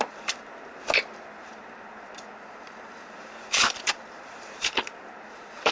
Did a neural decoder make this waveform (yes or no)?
yes